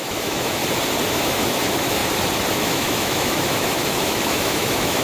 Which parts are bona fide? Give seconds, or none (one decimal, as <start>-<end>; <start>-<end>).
0.6-1.1; 2.0-2.5